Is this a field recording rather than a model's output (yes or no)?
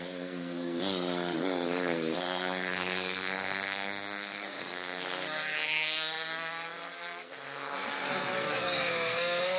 no